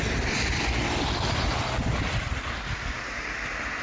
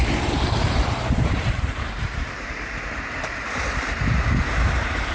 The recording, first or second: first